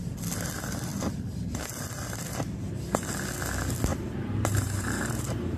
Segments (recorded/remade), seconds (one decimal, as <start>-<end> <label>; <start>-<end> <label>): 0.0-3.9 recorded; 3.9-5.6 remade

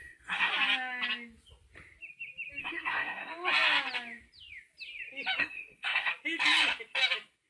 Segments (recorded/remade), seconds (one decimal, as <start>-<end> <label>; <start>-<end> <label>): 0.0-0.5 remade; 0.5-2.6 recorded; 2.6-3.3 remade; 3.3-5.4 recorded; 5.4-6.1 remade; 6.1-7.5 recorded

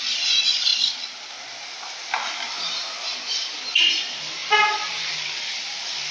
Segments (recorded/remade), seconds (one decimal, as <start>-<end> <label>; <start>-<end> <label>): 0.0-6.1 recorded